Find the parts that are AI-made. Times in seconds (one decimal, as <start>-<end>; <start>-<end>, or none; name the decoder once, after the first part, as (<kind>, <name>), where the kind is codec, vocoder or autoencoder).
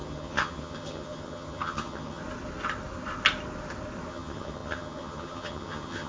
0.0-2.2 (vocoder, HiFi-GAN); 4.1-6.1